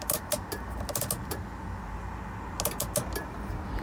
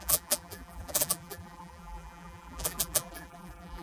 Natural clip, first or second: first